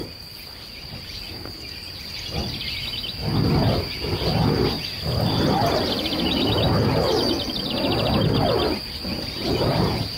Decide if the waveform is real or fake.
real